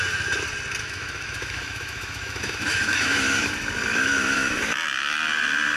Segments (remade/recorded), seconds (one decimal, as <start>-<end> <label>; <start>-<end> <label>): 0.0-0.8 recorded; 0.8-3.5 remade; 3.5-3.9 recorded; 3.9-4.6 remade; 4.6-5.8 recorded